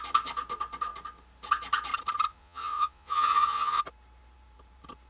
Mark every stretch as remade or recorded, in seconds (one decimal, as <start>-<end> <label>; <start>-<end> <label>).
0.0-2.3 recorded; 2.3-3.8 remade; 3.8-5.1 recorded